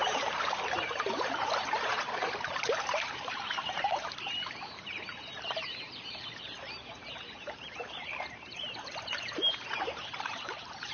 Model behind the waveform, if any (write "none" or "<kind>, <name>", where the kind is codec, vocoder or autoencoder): vocoder, BigVGAN v2